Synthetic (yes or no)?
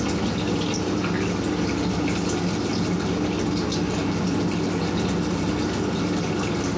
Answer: no